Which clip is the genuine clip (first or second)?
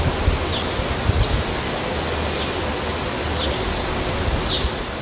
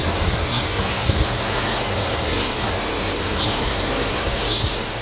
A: first